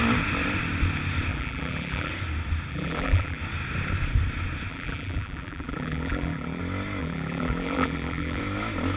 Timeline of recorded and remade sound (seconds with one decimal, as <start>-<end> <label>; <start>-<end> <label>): 0.0-1.3 recorded; 1.3-2.1 remade; 2.1-2.7 recorded; 2.7-3.4 remade; 3.4-4.7 recorded; 4.7-6.6 remade; 6.6-7.0 recorded; 7.0-8.4 remade; 8.4-9.0 recorded